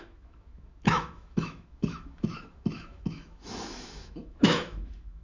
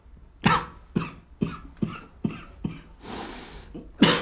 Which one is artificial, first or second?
first